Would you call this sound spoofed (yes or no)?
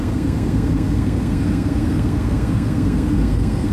yes